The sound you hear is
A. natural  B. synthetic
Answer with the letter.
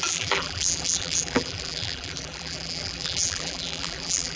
B